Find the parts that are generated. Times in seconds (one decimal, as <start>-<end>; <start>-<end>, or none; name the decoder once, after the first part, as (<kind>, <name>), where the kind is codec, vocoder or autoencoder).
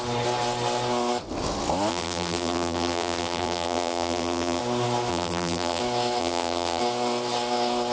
1.9-4.6 (vocoder, BigVGAN v2); 5.1-5.8; 6.2-6.8